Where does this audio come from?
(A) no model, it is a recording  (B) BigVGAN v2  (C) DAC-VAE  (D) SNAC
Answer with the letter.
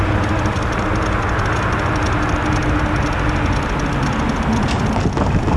A